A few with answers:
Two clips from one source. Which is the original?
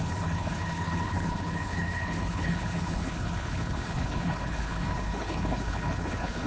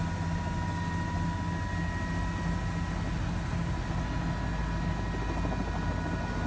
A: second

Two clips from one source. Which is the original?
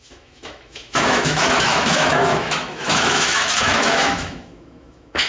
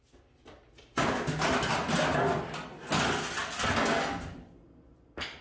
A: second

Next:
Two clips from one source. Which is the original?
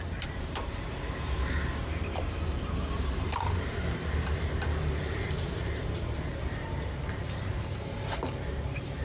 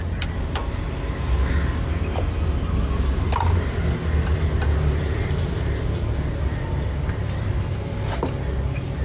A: second